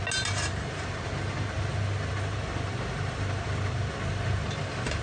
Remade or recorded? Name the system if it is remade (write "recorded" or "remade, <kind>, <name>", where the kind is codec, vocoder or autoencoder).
recorded